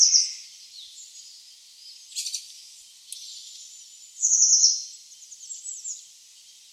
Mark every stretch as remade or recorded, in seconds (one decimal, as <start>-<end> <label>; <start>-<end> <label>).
0.0-6.7 recorded